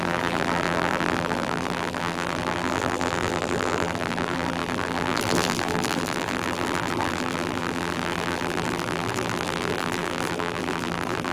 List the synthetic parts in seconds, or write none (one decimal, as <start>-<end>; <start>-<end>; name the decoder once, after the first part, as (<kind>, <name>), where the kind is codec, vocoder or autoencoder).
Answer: 0.0-11.3 (vocoder, BigVGAN v2)